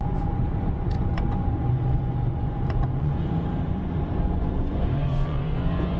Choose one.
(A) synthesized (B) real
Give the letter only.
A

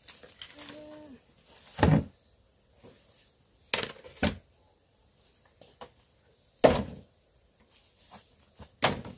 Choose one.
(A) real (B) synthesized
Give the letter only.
A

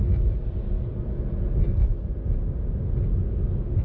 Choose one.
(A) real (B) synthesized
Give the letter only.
A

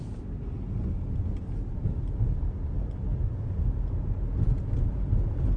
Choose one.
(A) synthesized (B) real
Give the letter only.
B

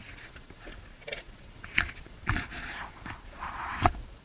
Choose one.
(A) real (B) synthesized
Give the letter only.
B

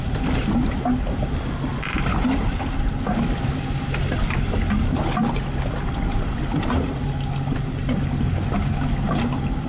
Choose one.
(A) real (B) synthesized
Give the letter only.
A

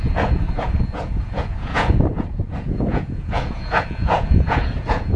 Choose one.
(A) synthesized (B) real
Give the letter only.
A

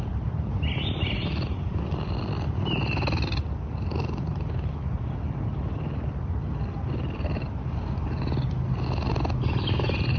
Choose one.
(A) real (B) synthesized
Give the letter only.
A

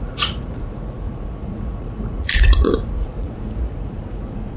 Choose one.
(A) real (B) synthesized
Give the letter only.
B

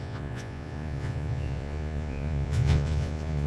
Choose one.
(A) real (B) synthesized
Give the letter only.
B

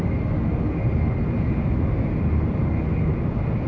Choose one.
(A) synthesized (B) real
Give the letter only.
B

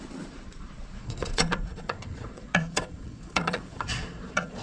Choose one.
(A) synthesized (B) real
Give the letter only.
A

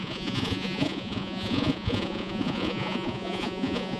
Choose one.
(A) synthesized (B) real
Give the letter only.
A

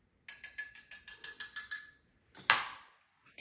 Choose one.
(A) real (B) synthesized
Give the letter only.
A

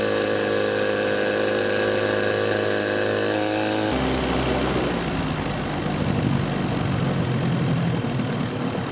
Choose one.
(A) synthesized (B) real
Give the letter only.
B